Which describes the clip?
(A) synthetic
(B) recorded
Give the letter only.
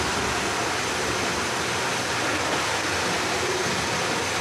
B